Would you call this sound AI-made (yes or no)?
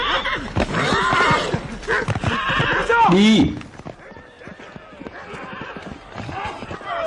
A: no